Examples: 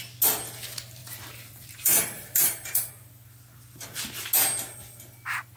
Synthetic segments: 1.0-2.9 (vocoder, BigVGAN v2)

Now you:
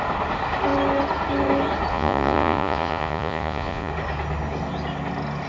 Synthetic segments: 1.9-3.9 (vocoder, Vocos)

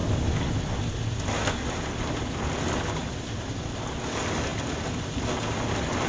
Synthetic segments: none

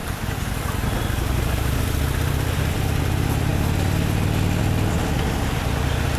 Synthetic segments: none

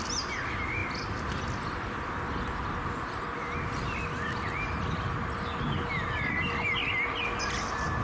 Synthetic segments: none

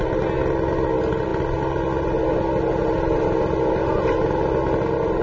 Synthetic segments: none

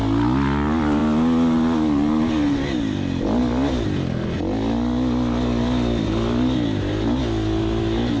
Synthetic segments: none

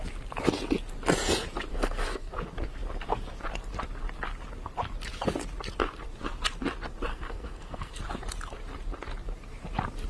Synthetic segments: 1.7-2.3 (codec, SNAC); 7.1-8.0